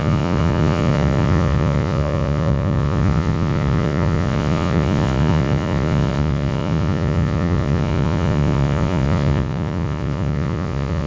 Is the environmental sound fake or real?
fake